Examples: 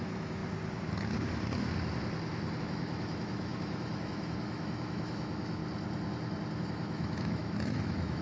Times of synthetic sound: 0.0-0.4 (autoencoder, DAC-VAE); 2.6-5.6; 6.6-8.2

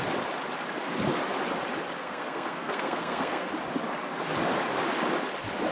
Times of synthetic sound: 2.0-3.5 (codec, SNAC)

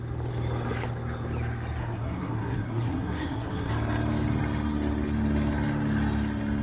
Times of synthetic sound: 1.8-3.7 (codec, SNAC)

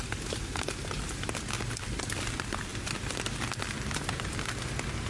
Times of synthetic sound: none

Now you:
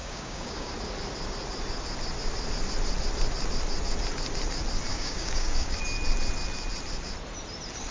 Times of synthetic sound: 0.0-0.7 (codec, DAC); 4.9-5.8

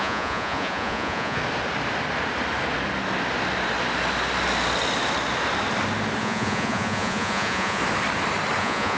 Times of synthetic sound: 0.0-1.4 (vocoder, Vocos); 6.2-7.8; 8.6-9.0

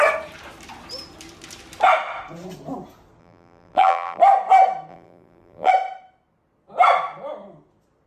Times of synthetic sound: 3.2-4.2 (vocoder, BigVGAN v2); 4.9-5.7

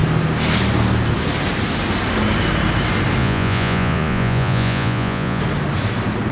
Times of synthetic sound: 3.2-5.4 (vocoder, Vocos)